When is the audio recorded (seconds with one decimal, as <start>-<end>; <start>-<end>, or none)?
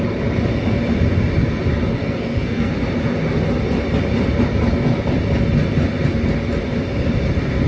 0.0-1.9; 2.7-7.7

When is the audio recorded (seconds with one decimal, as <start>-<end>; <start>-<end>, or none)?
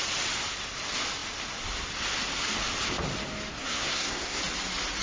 0.0-3.5; 4.4-5.0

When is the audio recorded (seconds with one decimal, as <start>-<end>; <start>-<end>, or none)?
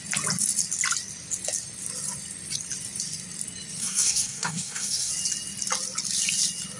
0.0-3.8; 5.1-6.8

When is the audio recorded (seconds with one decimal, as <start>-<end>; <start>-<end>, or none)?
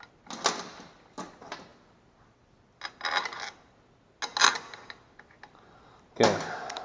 0.0-6.8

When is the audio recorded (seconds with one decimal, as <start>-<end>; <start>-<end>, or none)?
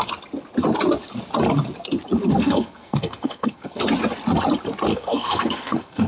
0.0-2.3; 3.8-4.9